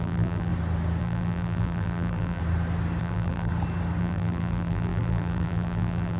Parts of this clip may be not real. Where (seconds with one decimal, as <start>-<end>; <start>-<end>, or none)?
0.0-0.5; 1.0-2.4; 3.0-3.5; 4.0-6.2